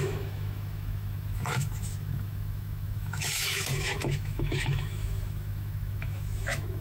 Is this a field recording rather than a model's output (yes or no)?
no